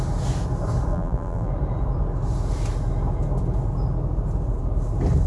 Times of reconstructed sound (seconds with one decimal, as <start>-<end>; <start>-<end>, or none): 0.9-1.5